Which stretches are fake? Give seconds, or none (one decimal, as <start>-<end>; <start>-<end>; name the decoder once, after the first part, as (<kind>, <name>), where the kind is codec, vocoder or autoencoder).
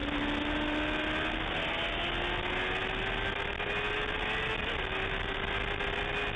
none